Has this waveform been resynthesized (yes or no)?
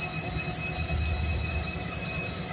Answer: no